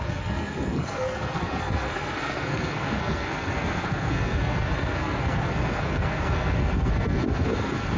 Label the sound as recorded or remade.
remade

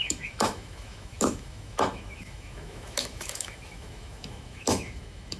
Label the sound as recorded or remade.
remade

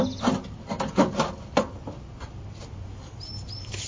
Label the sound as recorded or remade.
recorded